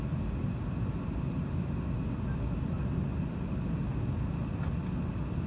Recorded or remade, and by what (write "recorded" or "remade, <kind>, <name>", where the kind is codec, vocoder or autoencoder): recorded